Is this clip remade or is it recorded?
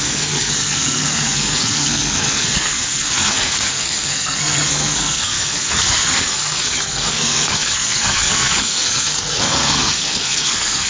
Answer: remade